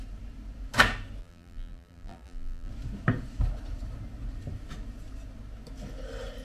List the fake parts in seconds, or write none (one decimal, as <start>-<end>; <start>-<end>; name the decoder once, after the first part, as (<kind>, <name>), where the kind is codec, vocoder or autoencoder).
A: 1.2-2.7 (vocoder, BigVGAN v2)